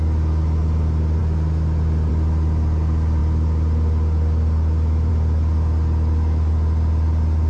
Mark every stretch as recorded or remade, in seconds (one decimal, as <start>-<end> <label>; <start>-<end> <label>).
0.0-7.5 recorded